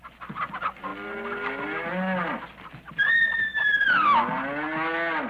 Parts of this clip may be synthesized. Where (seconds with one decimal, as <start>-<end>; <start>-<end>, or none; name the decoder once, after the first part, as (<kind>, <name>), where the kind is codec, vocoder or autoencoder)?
none